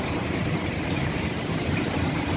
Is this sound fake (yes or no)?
yes